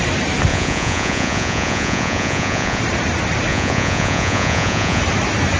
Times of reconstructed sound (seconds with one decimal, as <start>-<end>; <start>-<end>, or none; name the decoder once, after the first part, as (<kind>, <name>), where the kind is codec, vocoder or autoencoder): 0.5-2.8 (vocoder, Vocos); 3.5-5.0